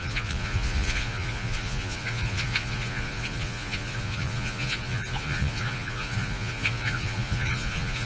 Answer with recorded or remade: remade